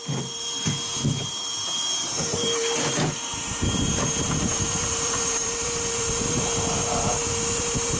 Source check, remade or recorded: remade